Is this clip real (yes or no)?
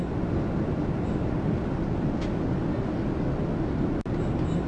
yes